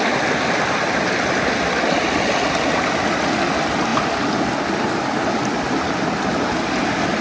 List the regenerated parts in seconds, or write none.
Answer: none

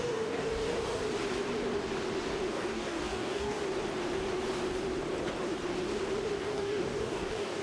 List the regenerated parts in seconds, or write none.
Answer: 0.0-1.0 (codec, DAC); 2.5-3.6; 6.4-7.6

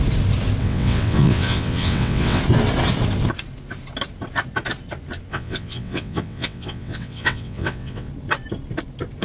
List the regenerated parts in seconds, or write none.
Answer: 0.6-2.4 (vocoder, WaveNeXt); 5.3-8.1

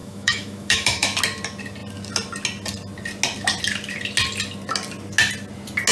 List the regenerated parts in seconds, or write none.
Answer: 0.0-1.2 (autoencoder, DAC-VAE)

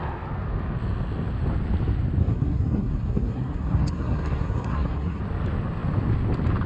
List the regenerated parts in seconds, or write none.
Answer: 2.2-5.2 (codec, SNAC)

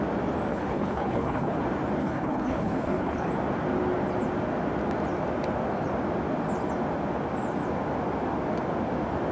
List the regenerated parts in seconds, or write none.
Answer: 0.5-1.6 (codec, HILCodec); 2.0-3.3

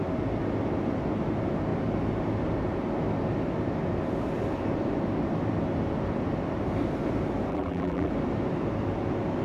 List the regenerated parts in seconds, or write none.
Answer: 7.5-8.1 (vocoder, BigVGAN v2)